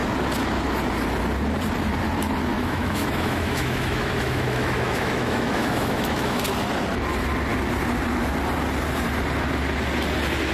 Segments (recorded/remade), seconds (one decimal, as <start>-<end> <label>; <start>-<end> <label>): 0.0-2.5 recorded; 2.5-6.4 remade; 6.4-10.5 recorded